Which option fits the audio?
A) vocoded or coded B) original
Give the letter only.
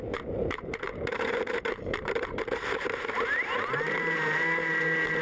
A